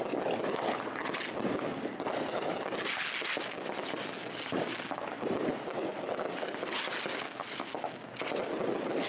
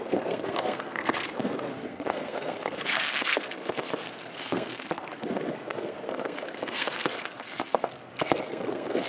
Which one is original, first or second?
first